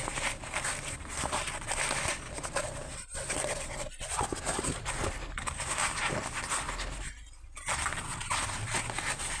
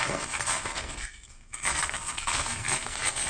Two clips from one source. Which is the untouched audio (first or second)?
first